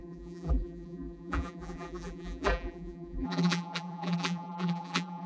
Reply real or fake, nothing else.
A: fake